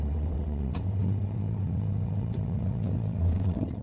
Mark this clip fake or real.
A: fake